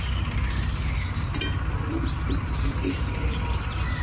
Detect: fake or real real